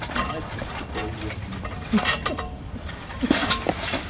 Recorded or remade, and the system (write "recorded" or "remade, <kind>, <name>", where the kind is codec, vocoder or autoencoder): recorded